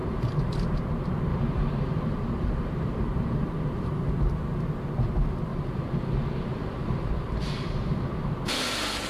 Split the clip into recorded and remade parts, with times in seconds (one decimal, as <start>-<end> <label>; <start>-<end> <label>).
0.0-0.8 remade; 0.8-1.3 recorded; 1.3-4.1 remade; 4.1-5.5 recorded; 5.5-9.1 remade